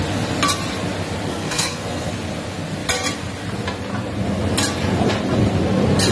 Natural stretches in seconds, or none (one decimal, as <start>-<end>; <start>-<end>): 0.0-1.3; 2.1-6.1